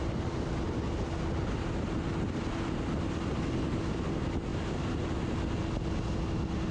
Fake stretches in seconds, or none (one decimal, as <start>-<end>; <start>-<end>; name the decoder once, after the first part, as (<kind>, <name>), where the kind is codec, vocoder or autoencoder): none